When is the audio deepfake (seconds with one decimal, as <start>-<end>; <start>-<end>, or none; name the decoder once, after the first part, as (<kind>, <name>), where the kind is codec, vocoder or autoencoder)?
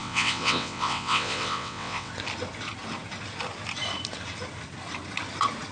0.0-2.1 (vocoder, WaveNeXt)